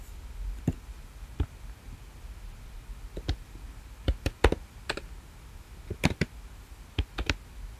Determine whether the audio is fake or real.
real